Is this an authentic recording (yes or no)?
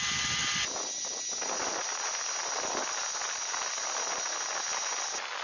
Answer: yes